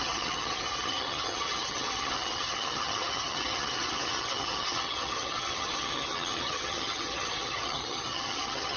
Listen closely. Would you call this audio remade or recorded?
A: remade